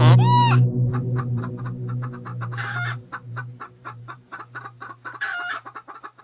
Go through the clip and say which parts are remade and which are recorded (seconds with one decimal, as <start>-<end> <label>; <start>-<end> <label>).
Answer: 0.0-0.9 recorded; 0.9-1.5 remade; 1.5-2.3 recorded; 2.3-6.2 remade